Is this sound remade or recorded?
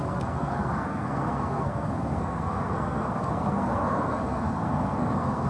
remade